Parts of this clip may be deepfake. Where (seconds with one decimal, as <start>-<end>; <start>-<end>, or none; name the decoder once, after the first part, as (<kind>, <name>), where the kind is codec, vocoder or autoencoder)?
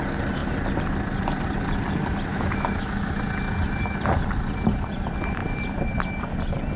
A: 2.3-3.1 (autoencoder, DAC-VAE)